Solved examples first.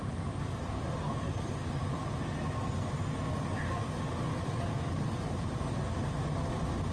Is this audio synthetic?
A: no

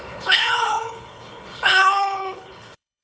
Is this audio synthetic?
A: yes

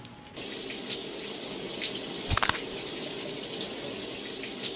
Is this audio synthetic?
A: no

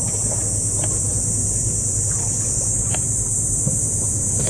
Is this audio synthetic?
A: no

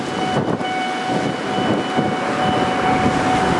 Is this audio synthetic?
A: no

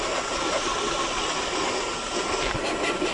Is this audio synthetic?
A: no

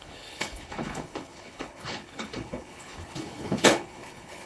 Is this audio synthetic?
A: yes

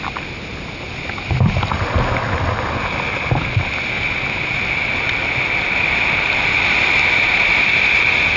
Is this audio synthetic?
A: no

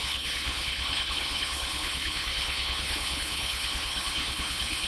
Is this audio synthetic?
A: yes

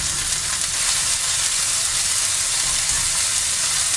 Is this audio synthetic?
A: no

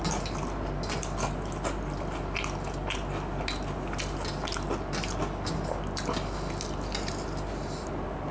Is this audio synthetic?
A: no